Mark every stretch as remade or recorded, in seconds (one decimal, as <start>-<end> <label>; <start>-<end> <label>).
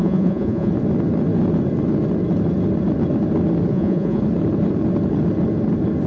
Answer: 0.0-0.7 remade; 0.7-3.7 recorded; 3.7-4.2 remade; 4.2-6.1 recorded